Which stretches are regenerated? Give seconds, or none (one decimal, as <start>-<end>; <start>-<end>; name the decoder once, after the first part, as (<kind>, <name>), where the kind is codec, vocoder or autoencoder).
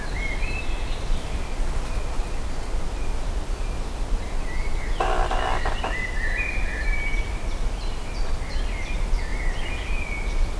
none